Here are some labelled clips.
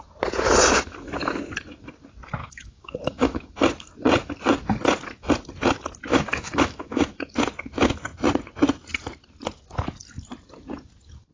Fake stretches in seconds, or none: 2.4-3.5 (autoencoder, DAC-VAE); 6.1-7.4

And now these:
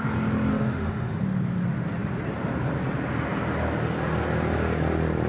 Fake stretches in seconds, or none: 0.5-1.2 (autoencoder, DAC-VAE)

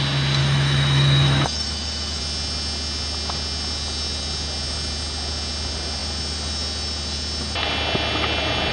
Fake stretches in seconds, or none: 0.4-2.2 (autoencoder, DAC-VAE)

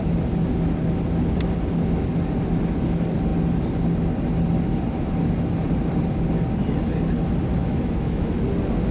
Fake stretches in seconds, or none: 7.6-8.3 (autoencoder, DAC-VAE)

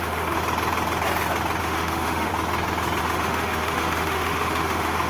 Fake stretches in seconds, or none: 0.0-0.4 (autoencoder, DAC-VAE); 1.6-2.3; 3.0-5.1

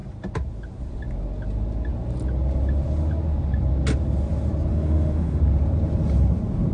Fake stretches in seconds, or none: 4.7-5.4 (autoencoder, DAC-VAE)

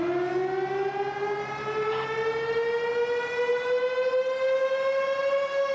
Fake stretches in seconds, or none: none